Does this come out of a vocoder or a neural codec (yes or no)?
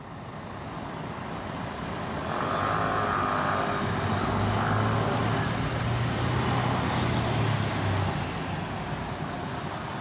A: no